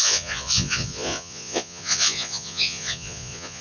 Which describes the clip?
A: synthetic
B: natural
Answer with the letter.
A